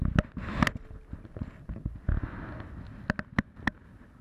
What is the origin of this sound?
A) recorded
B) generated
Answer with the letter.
A